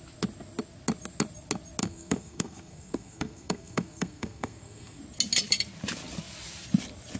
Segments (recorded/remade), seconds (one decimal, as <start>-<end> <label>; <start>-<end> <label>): 0.0-1.8 recorded; 1.8-5.0 remade; 5.0-7.2 recorded

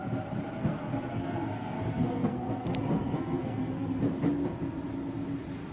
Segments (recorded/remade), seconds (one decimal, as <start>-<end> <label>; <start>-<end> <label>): 0.0-0.6 recorded; 0.6-4.0 remade; 4.0-5.7 recorded

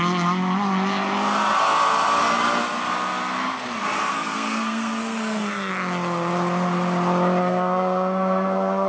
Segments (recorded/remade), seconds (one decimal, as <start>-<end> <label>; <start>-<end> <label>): 0.0-4.1 recorded; 4.1-5.7 remade; 5.7-7.4 recorded; 7.4-8.9 remade

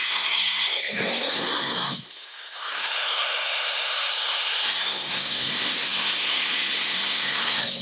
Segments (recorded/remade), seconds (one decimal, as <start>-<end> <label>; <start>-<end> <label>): 0.0-7.8 remade

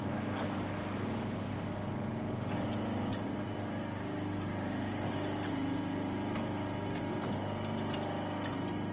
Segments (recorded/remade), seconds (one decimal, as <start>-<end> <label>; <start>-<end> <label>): 0.0-8.9 recorded

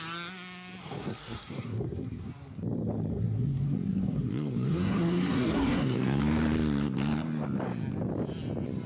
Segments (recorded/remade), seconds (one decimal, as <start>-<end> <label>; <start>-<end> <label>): 0.0-0.8 recorded; 0.8-2.3 remade; 2.3-3.1 recorded; 3.1-6.2 remade; 6.2-8.9 recorded

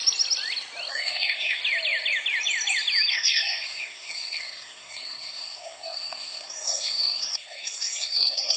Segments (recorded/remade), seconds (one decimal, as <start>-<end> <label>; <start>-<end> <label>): 0.0-0.9 recorded; 0.9-1.6 remade; 1.6-3.1 recorded; 3.1-8.6 remade

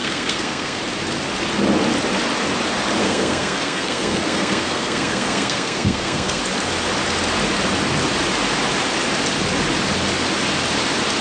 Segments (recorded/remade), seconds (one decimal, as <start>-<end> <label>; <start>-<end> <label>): 0.0-0.8 remade; 0.8-3.0 recorded; 3.0-6.4 remade; 6.4-11.2 recorded